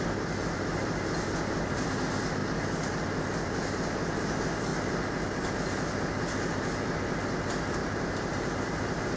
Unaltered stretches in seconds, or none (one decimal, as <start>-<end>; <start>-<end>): 0.0-7.8